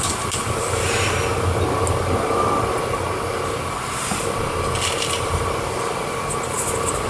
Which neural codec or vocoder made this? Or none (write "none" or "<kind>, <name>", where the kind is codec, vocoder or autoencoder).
none